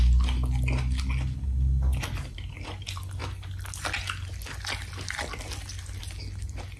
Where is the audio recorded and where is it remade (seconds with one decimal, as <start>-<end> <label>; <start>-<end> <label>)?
0.0-6.8 recorded